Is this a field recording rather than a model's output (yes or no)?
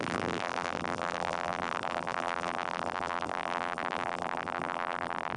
no